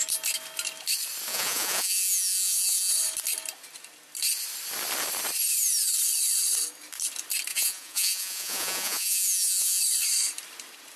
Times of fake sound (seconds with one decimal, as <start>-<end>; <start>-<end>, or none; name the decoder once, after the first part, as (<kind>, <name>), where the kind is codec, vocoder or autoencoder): 1.3-2.9 (vocoder, Vocos); 7.5-9.8